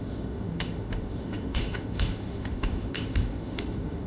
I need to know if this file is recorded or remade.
remade